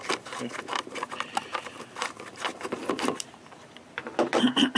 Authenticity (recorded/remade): remade